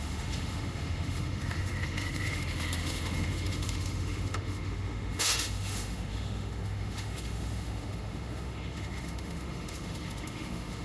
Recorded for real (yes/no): no